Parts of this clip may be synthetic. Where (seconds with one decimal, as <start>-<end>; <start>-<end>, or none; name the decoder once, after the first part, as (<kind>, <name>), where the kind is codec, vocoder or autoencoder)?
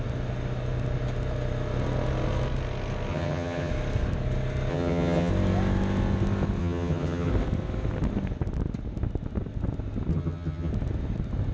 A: 3.1-3.7 (vocoder, HiFi-GAN); 4.7-5.3; 6.6-7.3; 10.1-10.7